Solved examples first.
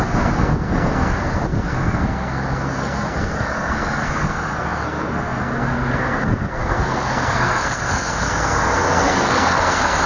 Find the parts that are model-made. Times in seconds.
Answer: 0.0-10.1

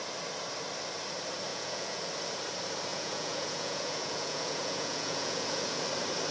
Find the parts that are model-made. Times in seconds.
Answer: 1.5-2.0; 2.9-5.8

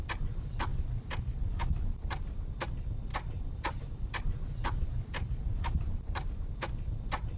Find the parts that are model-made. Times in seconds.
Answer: 3.1-6.3

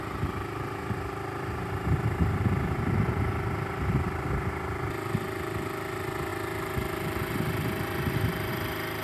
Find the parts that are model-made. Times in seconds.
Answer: 0.0-9.0

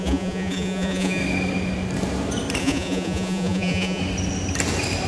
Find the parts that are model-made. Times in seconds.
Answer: 0.0-1.2; 2.6-4.0

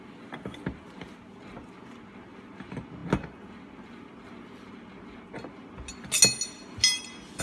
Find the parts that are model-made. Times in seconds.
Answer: none

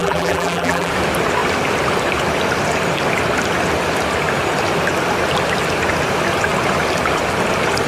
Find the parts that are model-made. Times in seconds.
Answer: 0.0-0.9